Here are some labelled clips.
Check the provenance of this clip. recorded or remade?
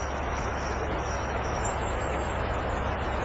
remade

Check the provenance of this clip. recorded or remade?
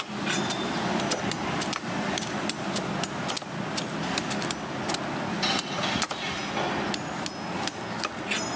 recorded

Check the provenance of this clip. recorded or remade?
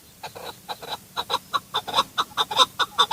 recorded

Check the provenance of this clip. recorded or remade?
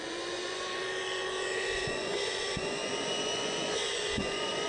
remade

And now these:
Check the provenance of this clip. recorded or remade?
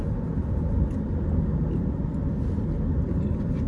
recorded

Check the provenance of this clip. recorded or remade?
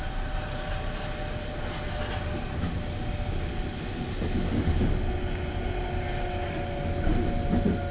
recorded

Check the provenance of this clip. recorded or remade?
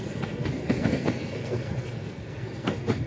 remade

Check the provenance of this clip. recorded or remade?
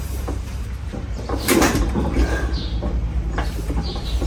remade